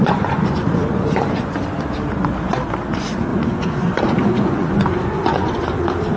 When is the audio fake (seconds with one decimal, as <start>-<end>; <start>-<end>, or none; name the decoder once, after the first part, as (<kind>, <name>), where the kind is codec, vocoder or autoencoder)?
0.0-1.6 (vocoder, Vocos); 3.3-5.8